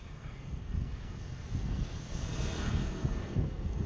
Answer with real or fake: fake